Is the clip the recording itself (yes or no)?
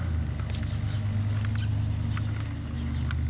yes